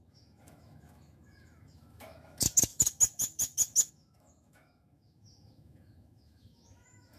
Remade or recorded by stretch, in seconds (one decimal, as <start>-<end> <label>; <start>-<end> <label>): 0.0-7.2 remade